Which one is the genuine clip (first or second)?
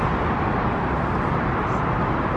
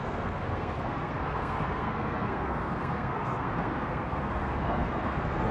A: first